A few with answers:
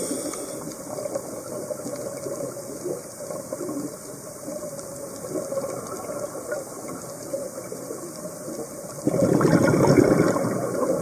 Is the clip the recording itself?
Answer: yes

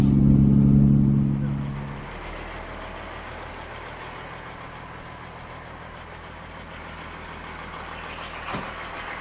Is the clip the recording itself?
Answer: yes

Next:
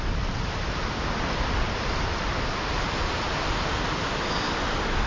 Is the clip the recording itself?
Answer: yes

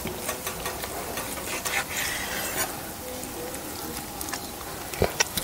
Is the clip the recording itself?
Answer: yes